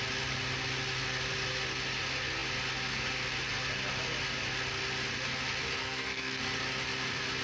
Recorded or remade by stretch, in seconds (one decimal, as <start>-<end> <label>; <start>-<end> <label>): 0.0-5.8 recorded; 5.8-6.4 remade; 6.4-7.4 recorded